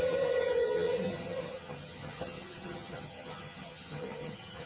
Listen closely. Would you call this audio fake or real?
fake